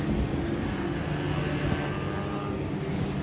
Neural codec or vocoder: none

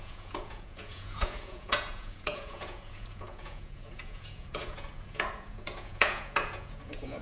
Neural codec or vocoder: vocoder, Vocos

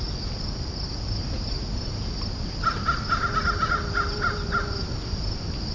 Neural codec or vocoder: none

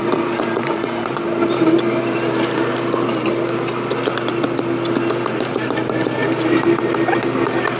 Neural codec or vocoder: none